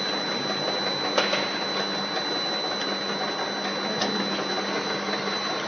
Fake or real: real